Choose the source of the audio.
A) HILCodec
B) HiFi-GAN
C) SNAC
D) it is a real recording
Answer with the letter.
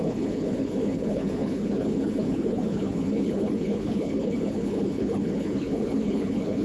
A